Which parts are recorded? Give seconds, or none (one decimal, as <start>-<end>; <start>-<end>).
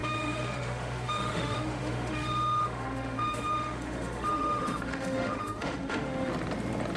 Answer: 6.3-7.0